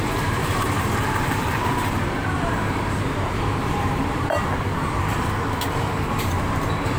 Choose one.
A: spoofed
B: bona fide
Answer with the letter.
A